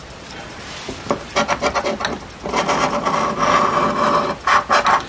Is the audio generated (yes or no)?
no